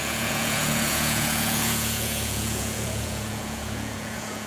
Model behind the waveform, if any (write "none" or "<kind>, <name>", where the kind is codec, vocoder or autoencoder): vocoder, Vocos